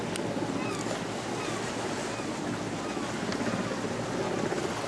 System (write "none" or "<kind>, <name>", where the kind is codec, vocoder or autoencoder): none